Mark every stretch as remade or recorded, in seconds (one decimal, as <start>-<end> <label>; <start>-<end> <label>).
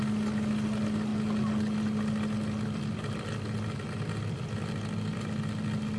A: 0.0-6.0 recorded